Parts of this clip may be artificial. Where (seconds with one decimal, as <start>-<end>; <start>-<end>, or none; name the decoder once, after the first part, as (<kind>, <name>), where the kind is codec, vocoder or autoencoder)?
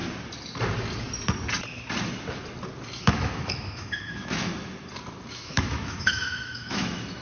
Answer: 3.0-4.5 (autoencoder, DAC-VAE); 5.3-7.2